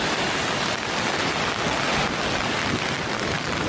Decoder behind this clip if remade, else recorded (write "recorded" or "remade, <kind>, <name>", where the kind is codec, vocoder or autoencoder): recorded